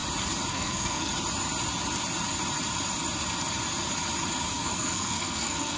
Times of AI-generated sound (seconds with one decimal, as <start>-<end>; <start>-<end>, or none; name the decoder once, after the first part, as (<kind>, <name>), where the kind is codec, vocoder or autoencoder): 0.5-1.1 (codec, SNAC); 4.5-5.8